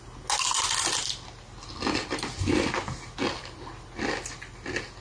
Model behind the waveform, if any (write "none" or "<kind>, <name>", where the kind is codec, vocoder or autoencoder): none